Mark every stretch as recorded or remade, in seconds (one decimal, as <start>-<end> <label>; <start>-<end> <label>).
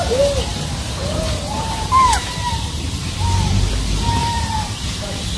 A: 0.0-0.5 recorded; 0.5-3.7 remade; 3.7-4.2 recorded; 4.2-5.0 remade; 5.0-5.4 recorded